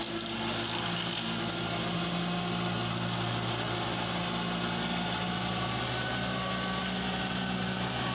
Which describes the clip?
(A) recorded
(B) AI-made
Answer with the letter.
A